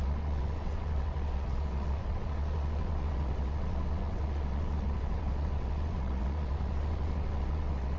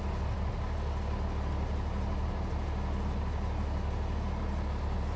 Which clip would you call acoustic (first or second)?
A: second